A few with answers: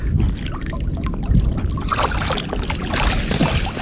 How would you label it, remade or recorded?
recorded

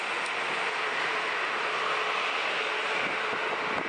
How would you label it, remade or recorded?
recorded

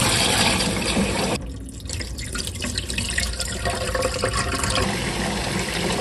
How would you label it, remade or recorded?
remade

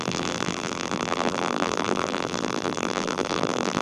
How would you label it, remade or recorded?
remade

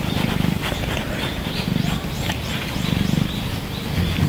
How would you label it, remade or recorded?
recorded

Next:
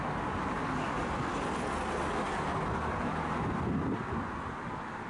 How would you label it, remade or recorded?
recorded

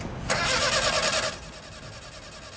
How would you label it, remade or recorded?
recorded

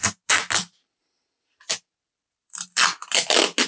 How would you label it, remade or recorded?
recorded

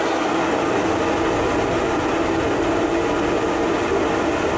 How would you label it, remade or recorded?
recorded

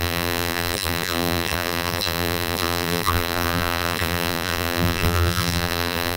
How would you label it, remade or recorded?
remade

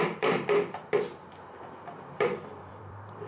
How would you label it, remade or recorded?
remade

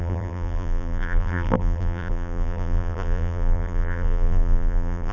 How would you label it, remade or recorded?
remade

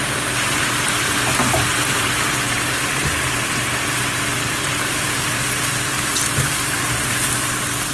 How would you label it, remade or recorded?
remade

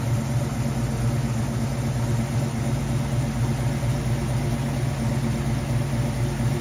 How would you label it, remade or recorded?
recorded